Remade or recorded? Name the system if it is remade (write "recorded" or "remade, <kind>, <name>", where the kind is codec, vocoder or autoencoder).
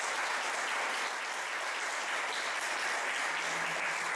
recorded